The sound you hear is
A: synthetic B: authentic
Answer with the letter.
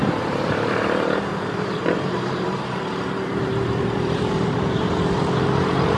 A